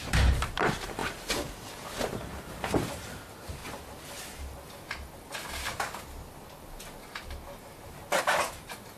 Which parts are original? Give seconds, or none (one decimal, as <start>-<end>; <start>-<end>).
1.0-3.0; 3.6-8.2

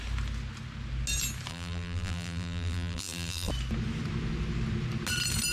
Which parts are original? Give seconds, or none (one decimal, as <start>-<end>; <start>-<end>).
0.0-1.5; 3.5-5.5

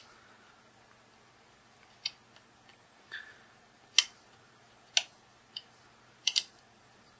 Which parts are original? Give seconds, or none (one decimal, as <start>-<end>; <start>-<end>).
0.0-2.7; 3.6-6.2

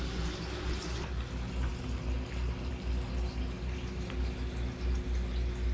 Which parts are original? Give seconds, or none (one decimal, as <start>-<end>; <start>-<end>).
0.0-5.7

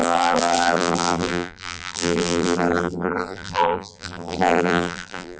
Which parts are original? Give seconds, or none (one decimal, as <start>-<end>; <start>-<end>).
none